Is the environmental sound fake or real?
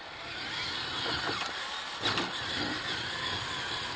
real